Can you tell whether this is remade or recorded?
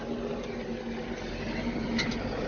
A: recorded